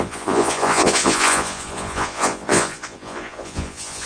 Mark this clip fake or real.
fake